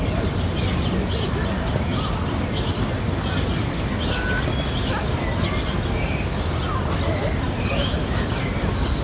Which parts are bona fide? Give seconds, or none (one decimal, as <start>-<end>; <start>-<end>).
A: 0.0-9.0